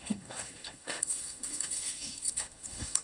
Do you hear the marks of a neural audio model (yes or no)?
yes